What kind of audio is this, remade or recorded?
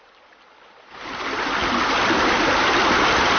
recorded